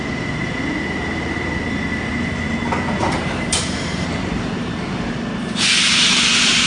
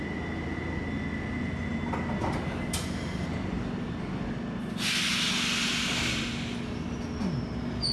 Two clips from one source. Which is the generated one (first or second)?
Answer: first